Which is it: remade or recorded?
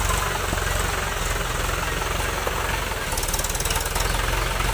recorded